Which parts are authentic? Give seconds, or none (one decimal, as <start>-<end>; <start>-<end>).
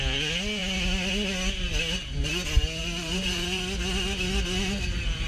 0.0-2.8; 3.6-5.3